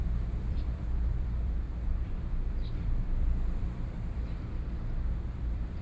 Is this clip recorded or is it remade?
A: remade